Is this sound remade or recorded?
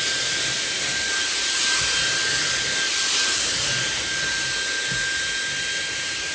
recorded